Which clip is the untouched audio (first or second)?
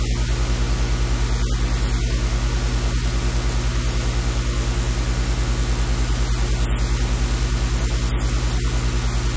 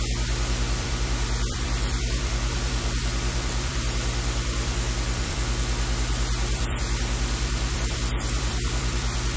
first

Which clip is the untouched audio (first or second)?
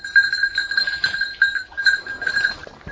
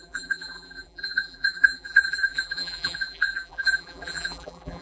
first